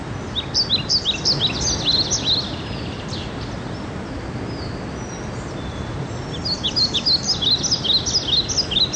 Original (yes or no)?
yes